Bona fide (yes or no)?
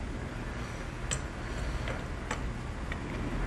yes